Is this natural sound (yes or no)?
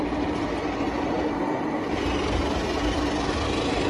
yes